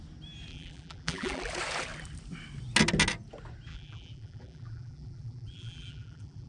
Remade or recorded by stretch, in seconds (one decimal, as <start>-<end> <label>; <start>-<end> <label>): 0.0-0.5 recorded; 0.5-1.5 remade; 1.5-3.7 recorded; 3.7-6.5 remade